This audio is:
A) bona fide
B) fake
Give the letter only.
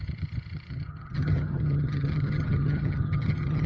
B